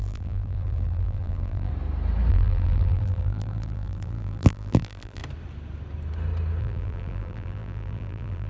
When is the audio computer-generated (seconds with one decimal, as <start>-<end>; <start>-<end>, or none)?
0.0-1.7; 2.3-5.2; 6.6-8.5

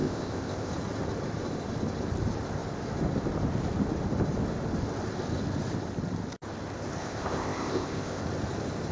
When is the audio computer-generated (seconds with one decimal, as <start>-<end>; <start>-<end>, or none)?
0.0-0.7; 7.0-8.2

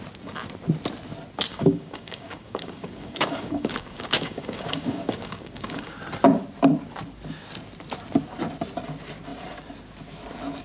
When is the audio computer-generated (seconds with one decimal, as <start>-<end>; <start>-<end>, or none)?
1.5-6.0

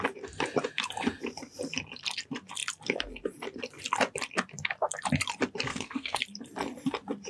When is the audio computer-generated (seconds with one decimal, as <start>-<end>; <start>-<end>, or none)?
5.7-6.2

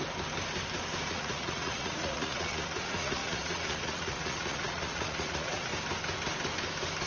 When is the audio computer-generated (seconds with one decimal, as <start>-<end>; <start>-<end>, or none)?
1.1-5.7

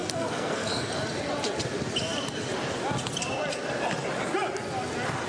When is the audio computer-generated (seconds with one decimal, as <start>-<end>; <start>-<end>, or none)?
0.0-0.9

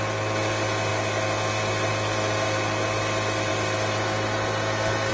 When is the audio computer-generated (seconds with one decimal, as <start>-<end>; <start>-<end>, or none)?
none

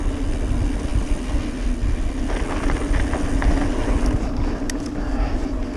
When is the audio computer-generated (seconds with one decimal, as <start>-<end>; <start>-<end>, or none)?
none